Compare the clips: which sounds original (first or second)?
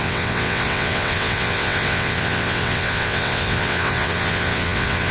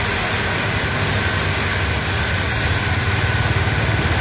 second